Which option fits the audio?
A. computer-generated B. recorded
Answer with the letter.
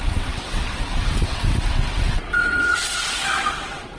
A